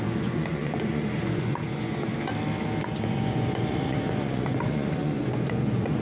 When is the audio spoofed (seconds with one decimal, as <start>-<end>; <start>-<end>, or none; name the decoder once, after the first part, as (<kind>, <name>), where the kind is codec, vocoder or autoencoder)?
0.0-2.1 (vocoder, Vocos); 2.8-6.0